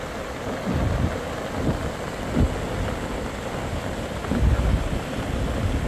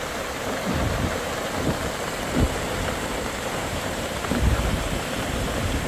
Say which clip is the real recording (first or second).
first